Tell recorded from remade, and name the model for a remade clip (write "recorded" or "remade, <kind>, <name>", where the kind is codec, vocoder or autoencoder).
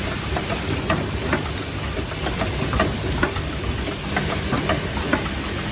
recorded